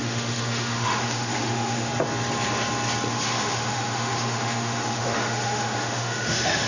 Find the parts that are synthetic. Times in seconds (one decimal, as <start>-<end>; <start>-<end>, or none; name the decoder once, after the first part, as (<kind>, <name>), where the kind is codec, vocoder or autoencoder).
0.0-1.9 (autoencoder, DAC-VAE); 3.1-6.7